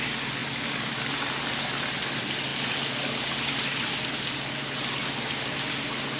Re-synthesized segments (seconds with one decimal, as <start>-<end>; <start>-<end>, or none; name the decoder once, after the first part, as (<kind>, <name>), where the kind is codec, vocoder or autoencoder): none